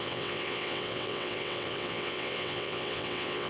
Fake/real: fake